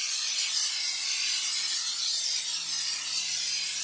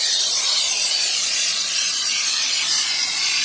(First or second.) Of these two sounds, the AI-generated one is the second